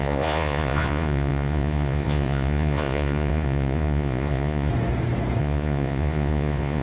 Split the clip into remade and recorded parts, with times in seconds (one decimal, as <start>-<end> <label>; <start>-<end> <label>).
0.0-4.7 remade; 4.7-5.4 recorded; 5.4-6.8 remade